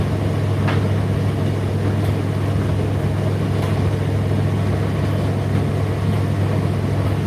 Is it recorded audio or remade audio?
recorded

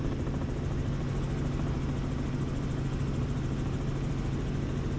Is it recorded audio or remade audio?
recorded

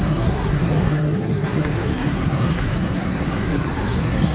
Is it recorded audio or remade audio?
remade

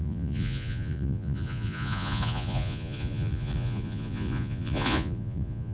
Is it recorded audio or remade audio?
remade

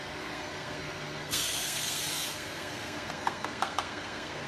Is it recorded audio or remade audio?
remade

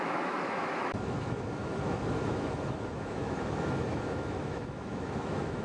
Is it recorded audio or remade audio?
remade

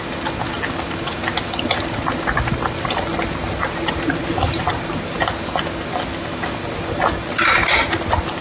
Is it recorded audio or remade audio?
recorded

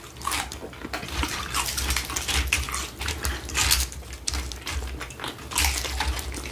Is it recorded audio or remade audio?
recorded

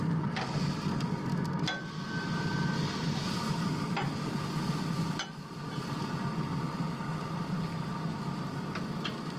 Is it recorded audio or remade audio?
recorded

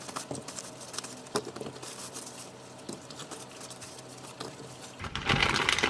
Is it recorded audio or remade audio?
recorded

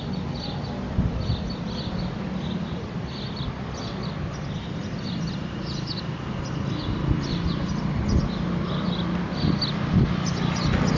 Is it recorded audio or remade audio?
recorded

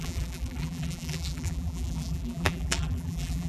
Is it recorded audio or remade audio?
remade